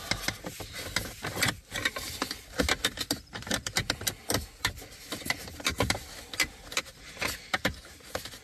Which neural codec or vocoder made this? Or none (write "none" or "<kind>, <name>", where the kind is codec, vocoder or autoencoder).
none